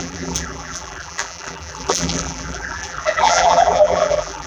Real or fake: fake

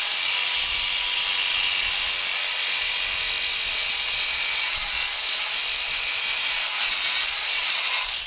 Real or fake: real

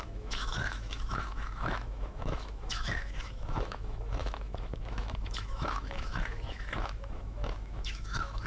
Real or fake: fake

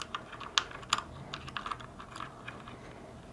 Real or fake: real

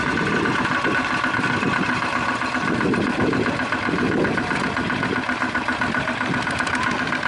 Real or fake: real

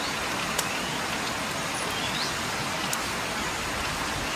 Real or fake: real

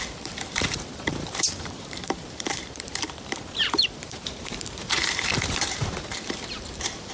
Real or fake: fake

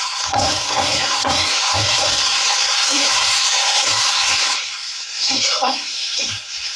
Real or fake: fake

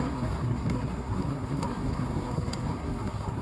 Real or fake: fake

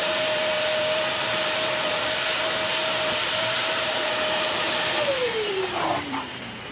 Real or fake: fake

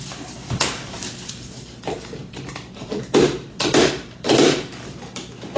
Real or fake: fake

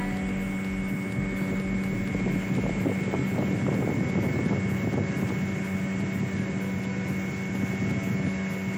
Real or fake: real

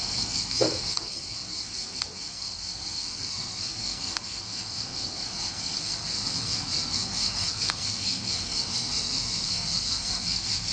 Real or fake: fake